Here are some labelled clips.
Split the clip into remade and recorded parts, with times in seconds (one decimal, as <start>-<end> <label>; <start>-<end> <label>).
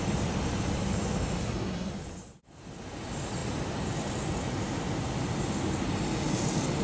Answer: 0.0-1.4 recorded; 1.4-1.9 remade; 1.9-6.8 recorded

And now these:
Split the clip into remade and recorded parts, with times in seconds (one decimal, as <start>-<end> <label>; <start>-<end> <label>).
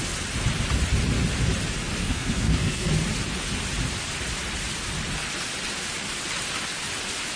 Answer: 0.0-2.0 recorded; 2.0-2.9 remade; 2.9-7.4 recorded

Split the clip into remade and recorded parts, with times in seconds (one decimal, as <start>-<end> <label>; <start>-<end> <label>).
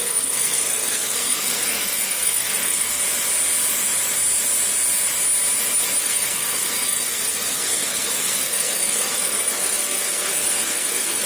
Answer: 0.0-3.0 remade; 3.0-6.0 recorded; 6.0-11.3 remade